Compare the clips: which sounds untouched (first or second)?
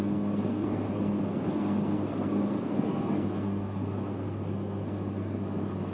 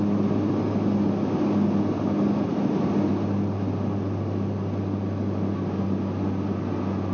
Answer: second